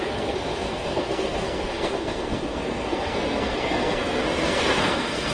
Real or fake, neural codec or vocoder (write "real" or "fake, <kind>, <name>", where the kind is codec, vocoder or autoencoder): fake, codec, SNAC